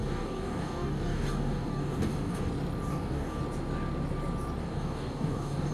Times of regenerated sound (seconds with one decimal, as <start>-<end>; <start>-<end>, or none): 0.0-2.5; 2.9-3.4; 4.6-5.7